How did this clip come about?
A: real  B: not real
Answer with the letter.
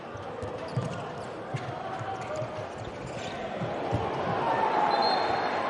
A